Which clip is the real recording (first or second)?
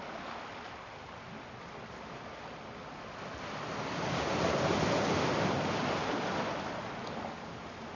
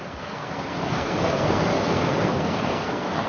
first